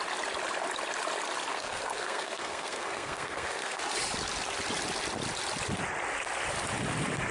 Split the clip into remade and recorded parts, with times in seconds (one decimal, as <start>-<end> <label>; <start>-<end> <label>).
0.0-1.5 recorded; 1.5-3.8 remade; 3.8-7.3 recorded